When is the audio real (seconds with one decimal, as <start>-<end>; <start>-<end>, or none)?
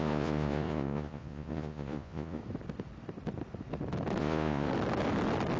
2.4-4.2; 4.7-5.6